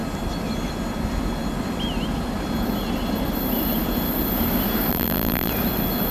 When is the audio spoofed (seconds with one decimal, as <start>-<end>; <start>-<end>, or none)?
4.9-5.5